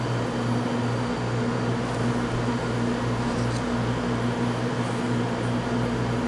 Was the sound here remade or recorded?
recorded